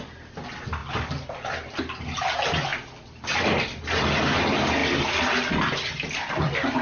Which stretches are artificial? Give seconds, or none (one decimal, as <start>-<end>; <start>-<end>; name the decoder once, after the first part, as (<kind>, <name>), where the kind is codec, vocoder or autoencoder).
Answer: none